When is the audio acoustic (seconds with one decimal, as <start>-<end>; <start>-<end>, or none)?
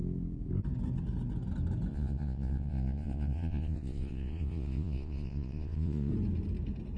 0.0-1.9; 6.1-7.0